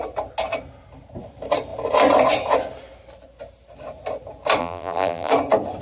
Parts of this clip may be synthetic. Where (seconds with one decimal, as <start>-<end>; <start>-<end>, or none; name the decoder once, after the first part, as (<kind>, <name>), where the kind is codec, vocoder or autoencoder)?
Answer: 4.6-5.3 (vocoder, BigVGAN v2)